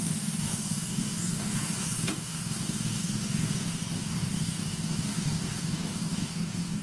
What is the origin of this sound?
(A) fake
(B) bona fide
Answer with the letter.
A